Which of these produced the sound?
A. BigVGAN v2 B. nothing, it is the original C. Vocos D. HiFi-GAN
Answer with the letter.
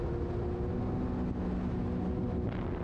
B